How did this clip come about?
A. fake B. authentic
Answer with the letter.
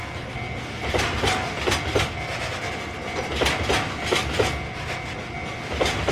B